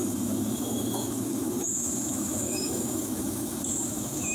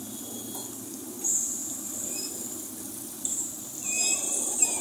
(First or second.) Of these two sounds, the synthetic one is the first